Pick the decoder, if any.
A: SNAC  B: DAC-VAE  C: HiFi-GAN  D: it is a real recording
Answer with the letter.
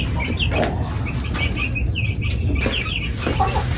D